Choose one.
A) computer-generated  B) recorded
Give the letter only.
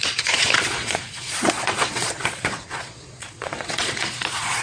A